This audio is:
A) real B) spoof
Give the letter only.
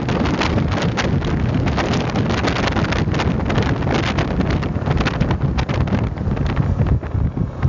A